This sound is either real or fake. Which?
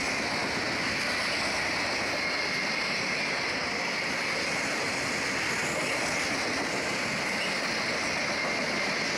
real